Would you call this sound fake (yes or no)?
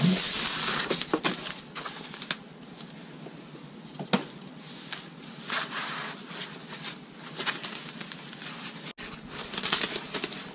no